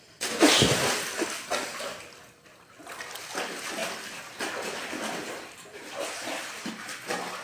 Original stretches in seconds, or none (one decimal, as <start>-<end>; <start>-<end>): 0.0-7.4